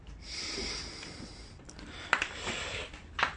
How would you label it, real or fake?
real